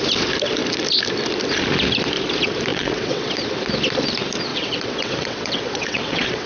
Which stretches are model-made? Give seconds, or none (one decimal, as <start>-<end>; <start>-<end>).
2.7-3.3; 4.5-6.5